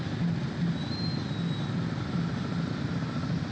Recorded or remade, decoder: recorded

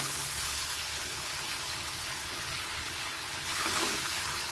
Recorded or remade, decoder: remade, codec, HILCodec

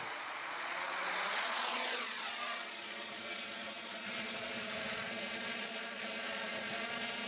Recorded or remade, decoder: remade, vocoder, Vocos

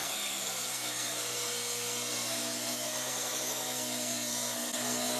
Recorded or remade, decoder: remade, codec, SNAC